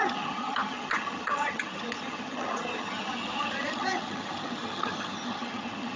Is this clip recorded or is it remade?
remade